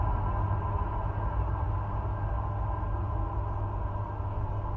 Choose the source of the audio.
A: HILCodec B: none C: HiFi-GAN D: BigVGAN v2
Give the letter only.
B